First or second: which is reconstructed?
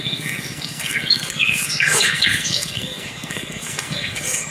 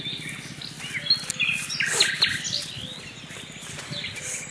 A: first